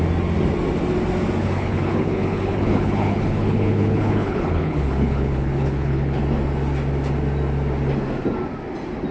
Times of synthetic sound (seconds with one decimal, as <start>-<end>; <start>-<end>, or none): 1.4-6.2